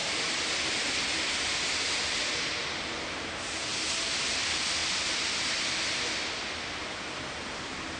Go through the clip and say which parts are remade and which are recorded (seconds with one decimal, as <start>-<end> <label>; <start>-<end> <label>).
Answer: 0.0-8.0 recorded